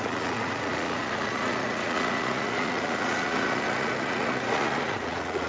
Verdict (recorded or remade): remade